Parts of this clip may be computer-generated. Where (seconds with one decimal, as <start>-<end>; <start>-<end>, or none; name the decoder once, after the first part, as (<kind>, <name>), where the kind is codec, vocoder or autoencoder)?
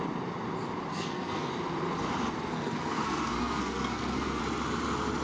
0.9-1.5 (codec, SNAC); 2.5-4.4